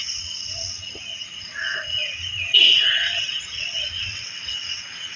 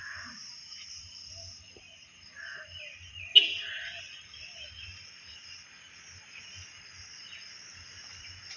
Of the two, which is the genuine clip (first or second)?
second